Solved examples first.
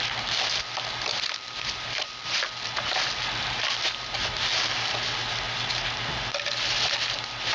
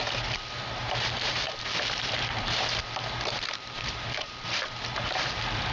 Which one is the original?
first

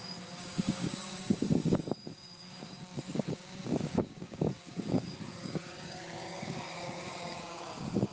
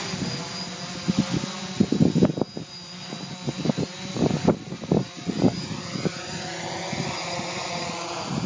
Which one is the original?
second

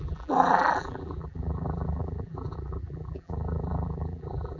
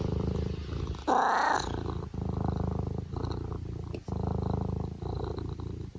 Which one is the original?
second